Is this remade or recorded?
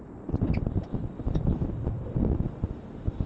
remade